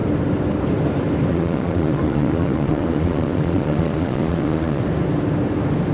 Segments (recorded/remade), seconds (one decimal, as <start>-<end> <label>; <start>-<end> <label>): 0.0-1.3 recorded; 1.3-4.8 remade; 4.8-5.9 recorded